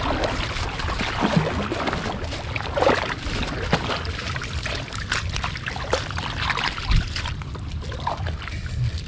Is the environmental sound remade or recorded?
recorded